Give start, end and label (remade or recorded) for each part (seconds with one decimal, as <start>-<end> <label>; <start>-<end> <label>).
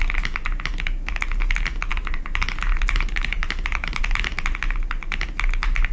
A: 0.0-1.9 recorded; 1.9-4.0 remade; 4.0-5.9 recorded